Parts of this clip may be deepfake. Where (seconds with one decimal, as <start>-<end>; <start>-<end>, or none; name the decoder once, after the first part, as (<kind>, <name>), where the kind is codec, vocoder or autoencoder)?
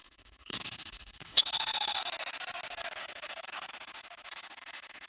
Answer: 0.0-2.0 (autoencoder, DAC-VAE); 3.0-5.1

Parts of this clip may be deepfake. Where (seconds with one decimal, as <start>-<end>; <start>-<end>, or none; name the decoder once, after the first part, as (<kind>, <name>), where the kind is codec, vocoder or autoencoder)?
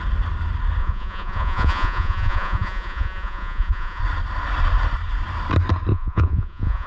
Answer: 0.8-4.0 (vocoder, Vocos); 5.9-6.9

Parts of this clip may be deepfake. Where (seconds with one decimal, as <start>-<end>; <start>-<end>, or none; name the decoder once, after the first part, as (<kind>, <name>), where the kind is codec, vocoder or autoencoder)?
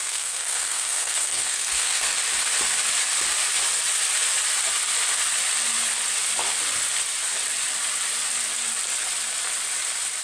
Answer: 0.0-2.2 (codec, SNAC)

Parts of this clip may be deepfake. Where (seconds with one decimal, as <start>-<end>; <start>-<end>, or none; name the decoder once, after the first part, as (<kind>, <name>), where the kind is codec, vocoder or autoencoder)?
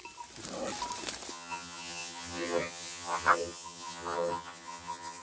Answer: 1.3-5.2 (vocoder, HiFi-GAN)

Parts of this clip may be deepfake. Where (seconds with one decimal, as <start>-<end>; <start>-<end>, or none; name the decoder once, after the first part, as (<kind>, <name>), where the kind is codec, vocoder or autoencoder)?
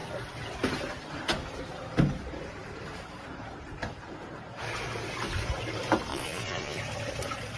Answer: 6.1-6.8 (vocoder, Vocos)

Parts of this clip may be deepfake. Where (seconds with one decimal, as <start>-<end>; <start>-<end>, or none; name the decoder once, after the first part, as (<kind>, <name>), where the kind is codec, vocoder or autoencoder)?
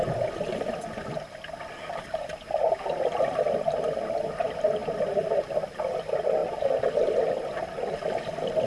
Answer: none